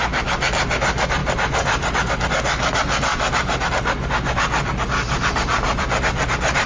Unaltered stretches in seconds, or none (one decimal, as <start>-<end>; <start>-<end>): 0.0-1.2; 2.3-3.1; 3.7-5.5

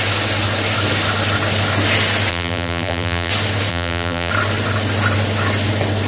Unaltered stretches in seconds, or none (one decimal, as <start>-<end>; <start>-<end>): 0.0-2.3; 3.3-3.7; 4.3-6.1

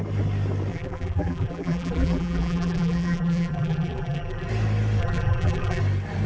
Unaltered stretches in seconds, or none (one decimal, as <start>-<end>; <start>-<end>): 0.0-0.7; 4.5-5.0; 5.8-6.3

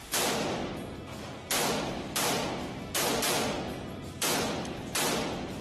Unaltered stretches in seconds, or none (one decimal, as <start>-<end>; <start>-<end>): 0.0-5.6

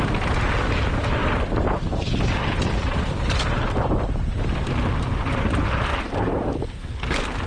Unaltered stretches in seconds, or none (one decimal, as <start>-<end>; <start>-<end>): 0.0-1.2; 5.4-5.9; 6.6-7.5